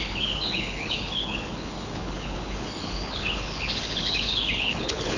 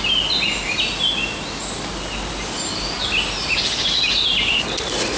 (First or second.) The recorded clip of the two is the second